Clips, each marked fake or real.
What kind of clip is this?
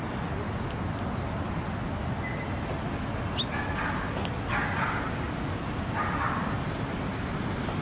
real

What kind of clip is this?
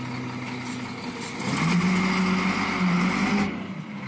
real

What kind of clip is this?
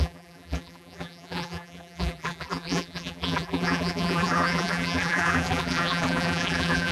fake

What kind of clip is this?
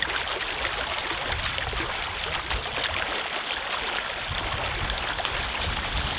real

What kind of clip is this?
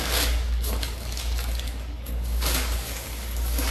fake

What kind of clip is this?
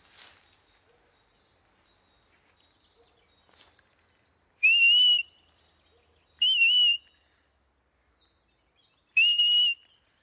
real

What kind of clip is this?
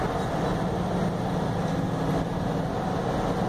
real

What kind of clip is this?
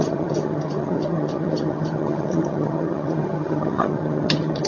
fake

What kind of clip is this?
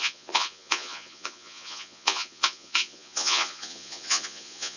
fake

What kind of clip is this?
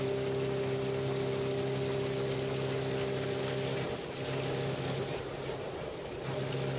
real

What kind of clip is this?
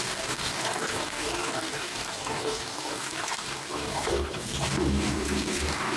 fake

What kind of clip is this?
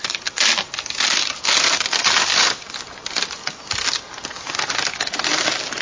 real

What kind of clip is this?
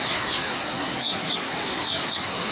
fake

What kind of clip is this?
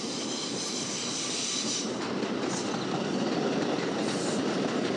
real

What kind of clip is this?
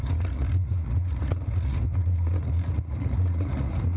fake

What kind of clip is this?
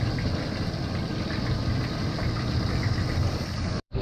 fake